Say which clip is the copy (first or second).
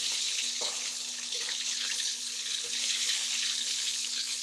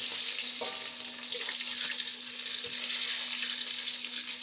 first